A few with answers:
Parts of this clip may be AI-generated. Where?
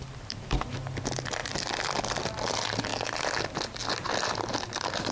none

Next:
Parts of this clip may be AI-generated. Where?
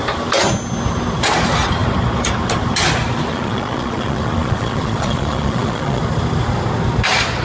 3.3-6.0 (vocoder, Vocos)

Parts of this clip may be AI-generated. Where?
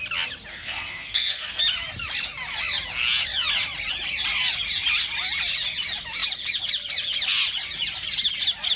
0.5-1.6 (codec, SNAC)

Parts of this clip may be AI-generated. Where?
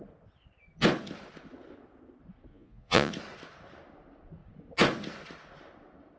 2.5-3.1 (vocoder, Vocos)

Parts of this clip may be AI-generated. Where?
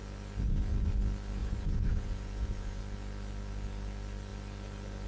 1.4-2.8 (vocoder, Vocos)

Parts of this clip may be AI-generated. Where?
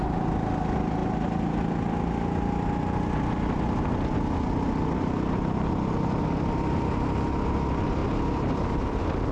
none